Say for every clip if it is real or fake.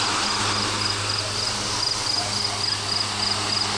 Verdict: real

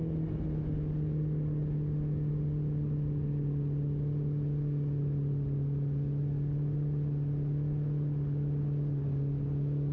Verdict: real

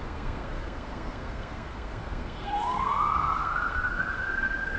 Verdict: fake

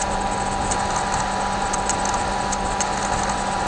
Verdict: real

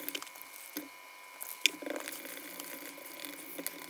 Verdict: real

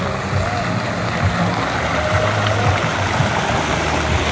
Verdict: real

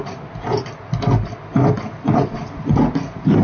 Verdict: real